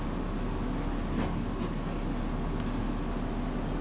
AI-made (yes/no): no